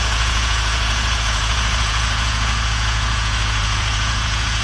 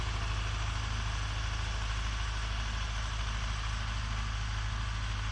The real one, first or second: second